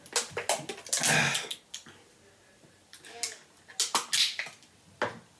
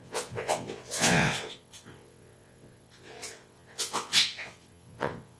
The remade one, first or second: second